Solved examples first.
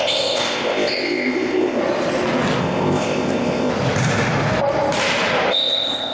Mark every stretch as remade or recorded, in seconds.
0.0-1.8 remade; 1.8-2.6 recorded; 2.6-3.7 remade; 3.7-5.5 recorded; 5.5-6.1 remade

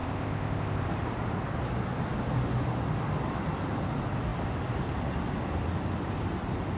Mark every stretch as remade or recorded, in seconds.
0.0-0.8 remade; 0.8-6.8 recorded

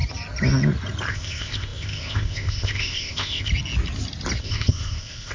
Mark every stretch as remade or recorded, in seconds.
0.0-1.1 recorded; 1.1-3.5 remade; 3.5-4.4 recorded; 4.4-5.3 remade

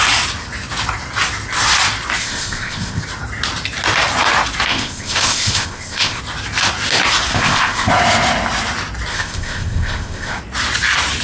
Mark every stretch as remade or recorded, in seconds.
0.0-2.2 recorded; 2.2-3.0 remade; 3.0-4.7 recorded; 4.7-6.2 remade; 6.2-7.3 recorded; 7.3-7.9 remade; 7.9-9.1 recorded; 9.1-10.4 remade; 10.4-11.2 recorded

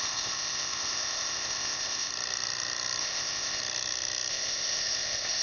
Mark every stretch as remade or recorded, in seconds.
0.0-2.1 remade; 2.1-3.0 recorded; 3.0-3.6 remade; 3.6-4.3 recorded; 4.3-5.4 remade